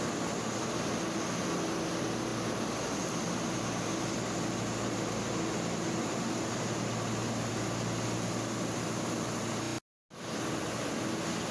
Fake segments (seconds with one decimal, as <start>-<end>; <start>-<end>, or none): none